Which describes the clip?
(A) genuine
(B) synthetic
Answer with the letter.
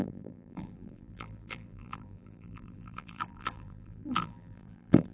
B